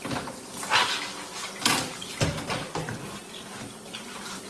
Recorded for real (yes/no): yes